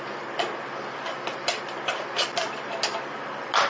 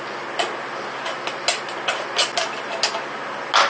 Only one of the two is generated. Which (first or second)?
first